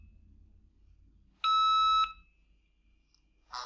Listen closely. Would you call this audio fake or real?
real